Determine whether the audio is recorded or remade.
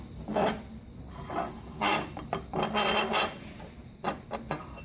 recorded